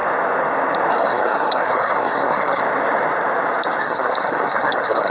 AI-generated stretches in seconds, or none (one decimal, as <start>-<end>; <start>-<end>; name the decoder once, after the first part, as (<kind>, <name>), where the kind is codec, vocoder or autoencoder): 0.9-2.6 (codec, SNAC); 3.8-5.1